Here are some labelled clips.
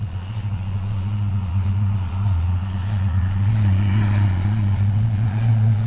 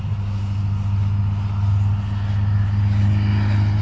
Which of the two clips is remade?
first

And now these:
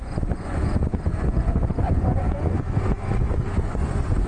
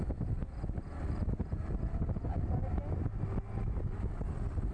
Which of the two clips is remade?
first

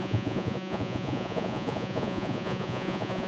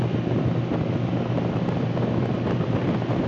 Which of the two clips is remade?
first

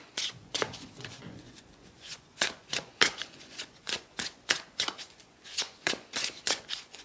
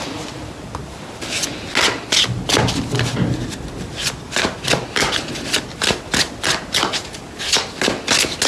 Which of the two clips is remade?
first